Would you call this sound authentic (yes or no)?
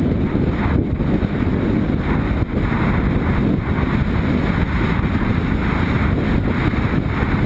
yes